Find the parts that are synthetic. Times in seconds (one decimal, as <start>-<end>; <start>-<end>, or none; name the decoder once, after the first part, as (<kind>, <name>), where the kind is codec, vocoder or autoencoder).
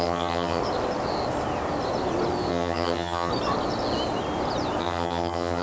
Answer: 0.0-0.6 (vocoder, HiFi-GAN); 2.5-3.3; 4.8-5.6